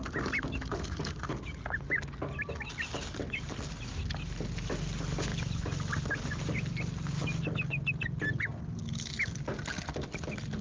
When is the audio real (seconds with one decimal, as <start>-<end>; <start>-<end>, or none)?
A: 0.0-10.6